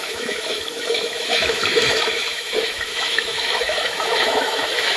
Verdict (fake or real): fake